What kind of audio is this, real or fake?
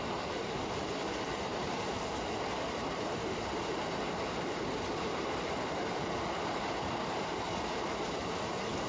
fake